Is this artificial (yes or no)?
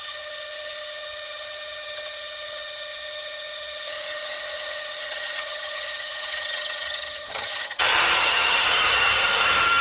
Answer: yes